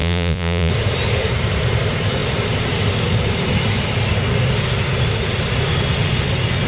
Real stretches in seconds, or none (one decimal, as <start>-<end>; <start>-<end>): 0.7-6.7